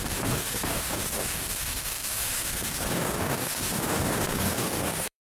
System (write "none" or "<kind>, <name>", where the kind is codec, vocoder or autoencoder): codec, DAC